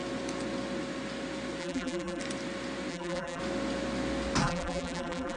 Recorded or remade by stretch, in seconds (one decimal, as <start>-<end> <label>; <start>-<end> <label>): 0.0-1.6 recorded; 1.6-2.2 remade; 2.2-2.9 recorded; 2.9-3.4 remade; 3.4-4.4 recorded; 4.4-5.4 remade